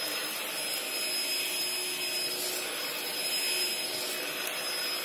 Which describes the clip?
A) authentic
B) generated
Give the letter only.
A